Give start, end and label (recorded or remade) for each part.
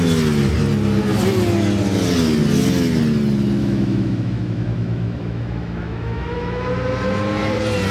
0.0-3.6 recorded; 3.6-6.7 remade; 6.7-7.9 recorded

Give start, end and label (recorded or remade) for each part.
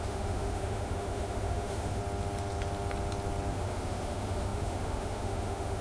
0.0-2.0 remade; 2.0-3.5 recorded; 3.5-5.8 remade